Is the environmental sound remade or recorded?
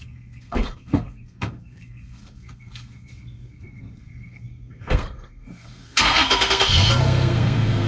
remade